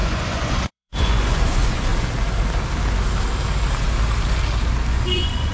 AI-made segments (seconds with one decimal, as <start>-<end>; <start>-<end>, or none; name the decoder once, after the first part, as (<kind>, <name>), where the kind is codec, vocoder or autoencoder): 0.0-1.9 (vocoder, Vocos); 4.9-5.5